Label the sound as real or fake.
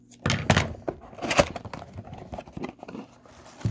real